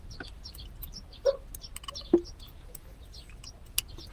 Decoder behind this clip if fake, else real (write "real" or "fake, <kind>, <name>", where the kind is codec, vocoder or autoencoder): real